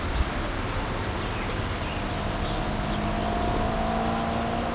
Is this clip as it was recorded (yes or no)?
yes